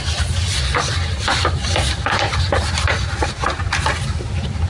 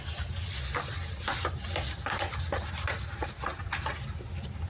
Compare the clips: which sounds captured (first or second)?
second